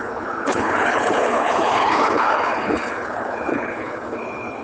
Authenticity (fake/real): fake